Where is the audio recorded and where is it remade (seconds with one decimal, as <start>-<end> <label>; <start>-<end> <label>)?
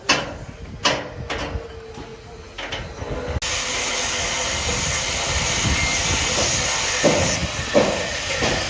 0.0-5.9 recorded; 5.9-6.8 remade; 6.8-8.7 recorded